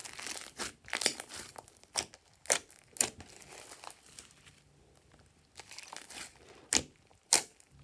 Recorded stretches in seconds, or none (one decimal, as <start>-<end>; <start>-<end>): 0.0-7.8